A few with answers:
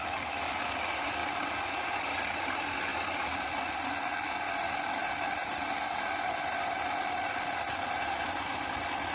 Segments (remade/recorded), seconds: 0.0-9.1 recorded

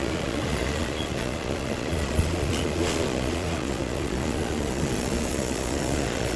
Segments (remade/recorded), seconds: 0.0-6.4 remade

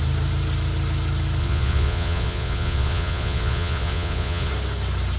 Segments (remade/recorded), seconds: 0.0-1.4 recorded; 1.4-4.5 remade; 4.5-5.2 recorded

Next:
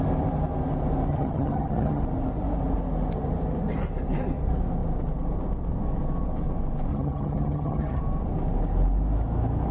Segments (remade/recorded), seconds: 0.0-1.1 recorded; 1.1-2.0 remade; 2.0-6.9 recorded; 6.9-8.0 remade; 8.0-9.7 recorded

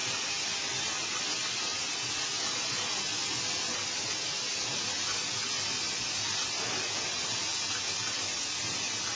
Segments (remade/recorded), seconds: 0.0-9.2 recorded